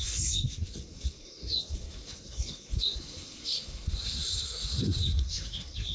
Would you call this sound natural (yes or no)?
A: no